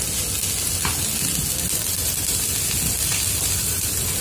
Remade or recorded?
recorded